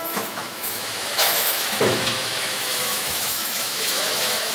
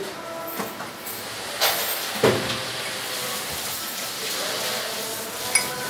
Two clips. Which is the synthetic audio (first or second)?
first